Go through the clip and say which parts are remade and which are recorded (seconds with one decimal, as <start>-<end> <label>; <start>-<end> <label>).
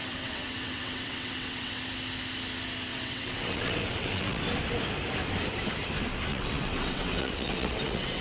0.0-1.8 remade; 1.8-2.9 recorded; 2.9-4.4 remade; 4.4-6.3 recorded; 6.3-8.2 remade